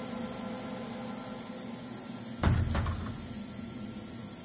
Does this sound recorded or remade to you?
recorded